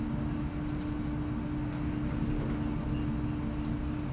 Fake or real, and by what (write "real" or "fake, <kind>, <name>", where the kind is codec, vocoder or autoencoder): real